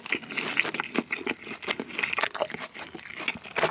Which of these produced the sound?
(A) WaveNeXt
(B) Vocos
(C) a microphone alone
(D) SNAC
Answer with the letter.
C